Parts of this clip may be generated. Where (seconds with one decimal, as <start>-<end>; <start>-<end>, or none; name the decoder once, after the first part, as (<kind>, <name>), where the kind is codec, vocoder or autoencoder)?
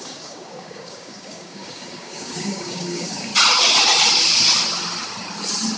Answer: 0.0-3.3 (codec, DAC)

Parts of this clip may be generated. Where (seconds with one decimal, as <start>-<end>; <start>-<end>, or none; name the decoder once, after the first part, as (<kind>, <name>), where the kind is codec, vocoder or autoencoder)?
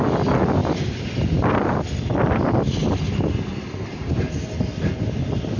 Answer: none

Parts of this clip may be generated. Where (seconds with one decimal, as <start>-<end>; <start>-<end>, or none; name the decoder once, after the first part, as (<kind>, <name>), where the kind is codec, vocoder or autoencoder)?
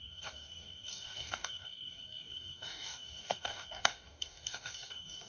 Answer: 0.0-5.3 (codec, DAC)